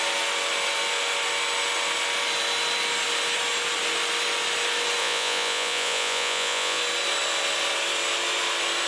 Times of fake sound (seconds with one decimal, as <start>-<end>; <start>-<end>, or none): 5.0-6.8